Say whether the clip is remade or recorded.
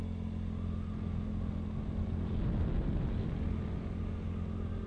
recorded